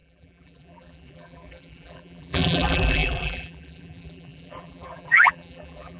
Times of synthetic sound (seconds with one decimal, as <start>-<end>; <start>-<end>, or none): 0.0-6.0